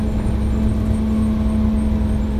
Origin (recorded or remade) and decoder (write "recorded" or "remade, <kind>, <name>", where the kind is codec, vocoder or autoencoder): recorded